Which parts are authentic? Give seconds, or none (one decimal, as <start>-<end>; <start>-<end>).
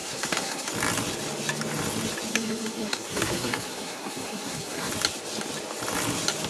0.7-2.3; 4.9-6.5